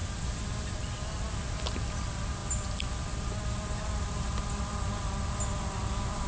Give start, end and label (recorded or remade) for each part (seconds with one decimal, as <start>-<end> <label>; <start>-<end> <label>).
0.0-6.3 recorded